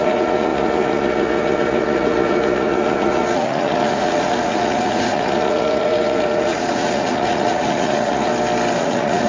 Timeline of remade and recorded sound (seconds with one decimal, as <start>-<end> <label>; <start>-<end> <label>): 0.0-8.3 remade; 8.3-8.8 recorded; 8.8-9.3 remade